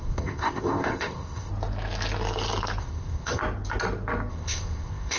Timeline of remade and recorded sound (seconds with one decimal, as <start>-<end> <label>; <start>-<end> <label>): 0.0-1.5 remade; 1.5-2.8 recorded; 2.8-3.4 remade; 3.4-4.3 recorded; 4.3-5.2 remade